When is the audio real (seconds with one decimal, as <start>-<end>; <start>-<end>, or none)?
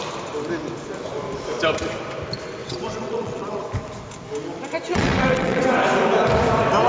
0.0-2.6; 3.7-4.9; 5.6-6.9